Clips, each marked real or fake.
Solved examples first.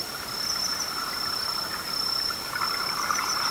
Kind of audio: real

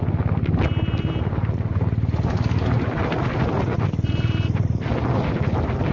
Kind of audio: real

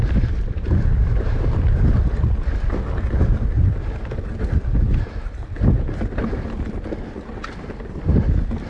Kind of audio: real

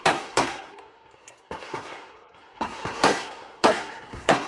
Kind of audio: fake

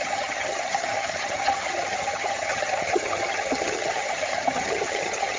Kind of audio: fake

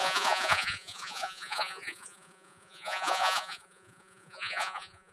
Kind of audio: fake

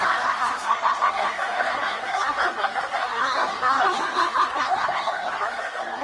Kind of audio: fake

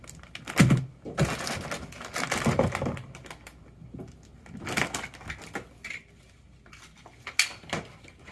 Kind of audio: real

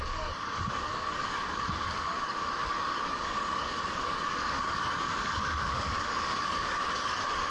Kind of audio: fake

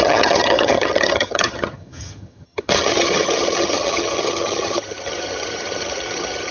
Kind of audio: fake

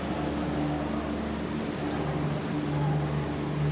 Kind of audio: real